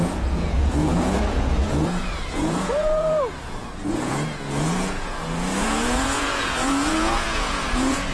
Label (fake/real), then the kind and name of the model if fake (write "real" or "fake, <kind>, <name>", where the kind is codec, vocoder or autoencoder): fake, vocoder, Vocos